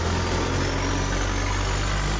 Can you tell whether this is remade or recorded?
recorded